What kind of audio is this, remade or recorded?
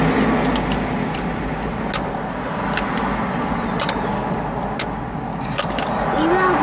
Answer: recorded